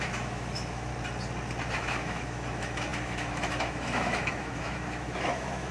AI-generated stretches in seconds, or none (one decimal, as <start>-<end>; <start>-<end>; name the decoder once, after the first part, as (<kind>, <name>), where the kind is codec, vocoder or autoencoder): 0.0-0.9 (autoencoder, DAC-VAE); 1.7-5.7